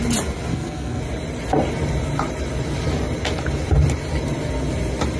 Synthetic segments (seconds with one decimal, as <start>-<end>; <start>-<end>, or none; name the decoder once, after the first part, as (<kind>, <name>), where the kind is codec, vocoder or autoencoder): 0.5-1.0 (codec, SNAC)